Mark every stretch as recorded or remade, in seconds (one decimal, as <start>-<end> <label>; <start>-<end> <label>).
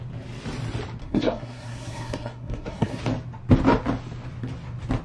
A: 0.0-1.0 recorded; 1.0-3.0 remade; 3.0-5.0 recorded